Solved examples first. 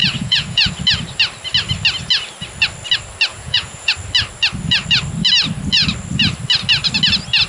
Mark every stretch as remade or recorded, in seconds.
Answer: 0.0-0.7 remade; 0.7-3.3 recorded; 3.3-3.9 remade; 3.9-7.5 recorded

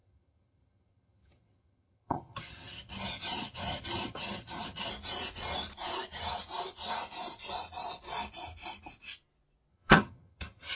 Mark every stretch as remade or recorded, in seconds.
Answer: 0.0-4.9 remade; 4.9-9.7 recorded; 9.7-10.8 remade

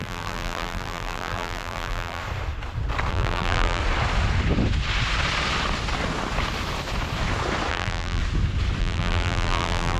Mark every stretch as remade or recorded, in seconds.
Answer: 0.0-2.2 remade; 2.2-3.1 recorded; 3.1-3.8 remade; 3.8-7.7 recorded; 7.7-8.2 remade; 8.2-8.8 recorded; 8.8-10.0 remade

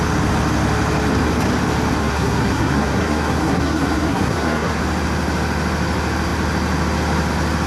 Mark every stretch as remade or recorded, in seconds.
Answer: 0.0-2.0 recorded; 2.0-4.8 remade; 4.8-7.7 recorded

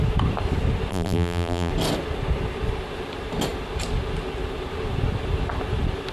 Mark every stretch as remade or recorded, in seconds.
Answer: 0.0-0.9 recorded; 0.9-1.7 remade; 1.7-6.1 recorded

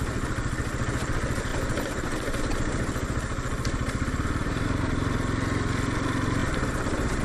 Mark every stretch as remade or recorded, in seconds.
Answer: 0.0-1.5 recorded; 1.5-2.4 remade; 2.4-4.4 recorded; 4.4-5.1 remade; 5.1-6.4 recorded; 6.4-7.2 remade